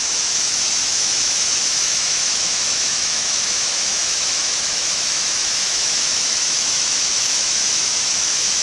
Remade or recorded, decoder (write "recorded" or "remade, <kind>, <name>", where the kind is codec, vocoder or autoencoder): remade, autoencoder, DAC-VAE